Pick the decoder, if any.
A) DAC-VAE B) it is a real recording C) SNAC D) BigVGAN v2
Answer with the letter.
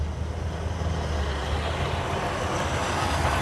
B